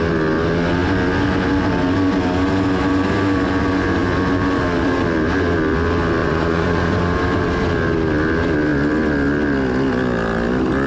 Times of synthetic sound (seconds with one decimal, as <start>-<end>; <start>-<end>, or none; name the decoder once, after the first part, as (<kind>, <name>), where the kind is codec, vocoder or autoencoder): 6.2-7.0 (vocoder, Vocos)